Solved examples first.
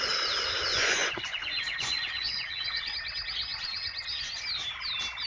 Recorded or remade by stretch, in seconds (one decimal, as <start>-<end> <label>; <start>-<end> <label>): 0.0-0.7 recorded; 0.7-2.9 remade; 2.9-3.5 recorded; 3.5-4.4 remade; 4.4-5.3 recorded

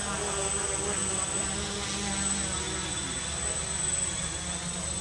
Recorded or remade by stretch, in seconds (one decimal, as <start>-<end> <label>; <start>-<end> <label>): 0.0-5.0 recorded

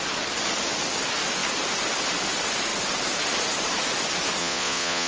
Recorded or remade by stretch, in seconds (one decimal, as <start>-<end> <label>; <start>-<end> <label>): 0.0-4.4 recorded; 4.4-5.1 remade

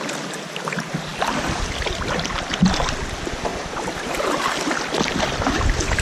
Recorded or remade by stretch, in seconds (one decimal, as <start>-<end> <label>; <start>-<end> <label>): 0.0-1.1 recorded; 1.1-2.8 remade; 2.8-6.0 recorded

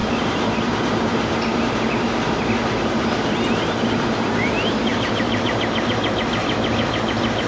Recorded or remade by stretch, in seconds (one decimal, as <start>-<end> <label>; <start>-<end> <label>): 0.0-6.4 remade; 6.4-7.5 recorded